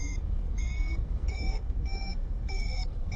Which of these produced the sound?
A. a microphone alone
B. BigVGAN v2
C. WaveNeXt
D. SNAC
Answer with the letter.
D